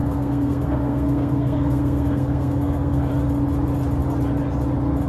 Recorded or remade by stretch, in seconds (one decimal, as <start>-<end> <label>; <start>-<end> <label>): 0.0-3.1 remade; 3.1-5.1 recorded